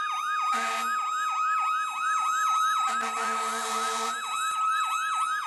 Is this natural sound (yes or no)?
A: no